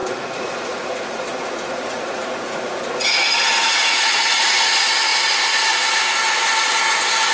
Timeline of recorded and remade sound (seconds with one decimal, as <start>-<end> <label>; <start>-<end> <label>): 0.0-4.4 remade; 4.4-7.3 recorded

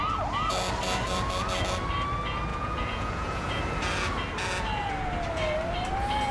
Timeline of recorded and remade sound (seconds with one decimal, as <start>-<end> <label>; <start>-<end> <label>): 0.0-2.5 recorded; 2.5-3.6 remade; 3.6-6.3 recorded

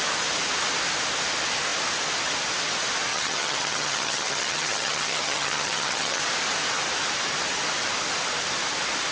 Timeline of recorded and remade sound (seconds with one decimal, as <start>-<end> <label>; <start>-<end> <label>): 0.0-3.1 recorded; 3.1-6.2 remade; 6.2-9.1 recorded

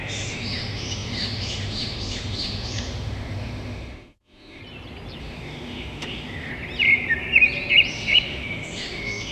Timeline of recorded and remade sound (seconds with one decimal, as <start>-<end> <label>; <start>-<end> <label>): 0.0-4.6 remade; 4.6-5.2 recorded; 5.2-6.5 remade; 6.5-7.9 recorded; 7.9-9.3 remade

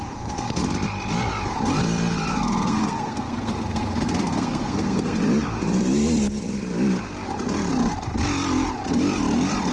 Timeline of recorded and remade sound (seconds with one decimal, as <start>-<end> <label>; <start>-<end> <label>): 0.0-0.6 remade; 0.6-2.3 recorded; 2.3-5.2 remade; 5.2-9.7 recorded

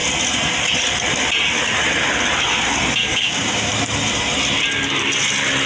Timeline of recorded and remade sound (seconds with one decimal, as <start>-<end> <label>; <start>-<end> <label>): 0.0-3.0 recorded; 3.0-3.7 remade; 3.7-5.7 recorded